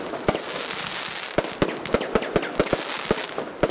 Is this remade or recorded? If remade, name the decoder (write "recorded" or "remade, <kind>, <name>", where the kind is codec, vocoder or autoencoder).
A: recorded